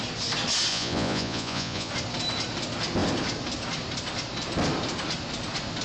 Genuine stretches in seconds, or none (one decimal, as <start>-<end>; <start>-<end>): 0.0-0.7; 1.9-5.8